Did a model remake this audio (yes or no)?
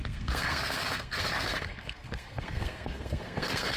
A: yes